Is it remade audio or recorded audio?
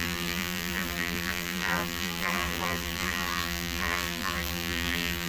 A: remade